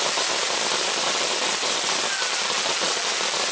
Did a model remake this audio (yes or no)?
no